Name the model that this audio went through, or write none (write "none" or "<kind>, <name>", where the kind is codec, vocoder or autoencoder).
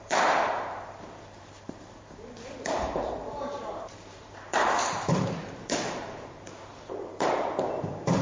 vocoder, BigVGAN v2